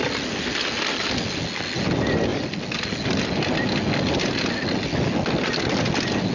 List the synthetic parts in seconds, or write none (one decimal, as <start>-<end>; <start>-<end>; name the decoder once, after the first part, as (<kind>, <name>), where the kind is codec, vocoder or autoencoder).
none